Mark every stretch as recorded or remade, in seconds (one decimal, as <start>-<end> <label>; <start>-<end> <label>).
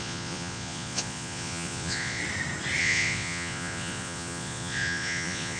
0.0-2.2 remade; 2.2-2.8 recorded; 2.8-5.6 remade